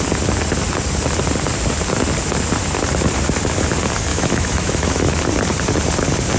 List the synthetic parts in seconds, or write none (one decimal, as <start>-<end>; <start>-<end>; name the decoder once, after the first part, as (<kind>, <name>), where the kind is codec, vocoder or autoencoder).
4.1-5.2 (autoencoder, DAC-VAE)